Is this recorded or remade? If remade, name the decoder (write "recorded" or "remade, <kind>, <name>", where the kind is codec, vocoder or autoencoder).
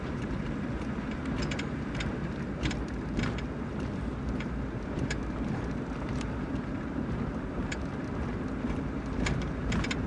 remade, vocoder, BigVGAN v2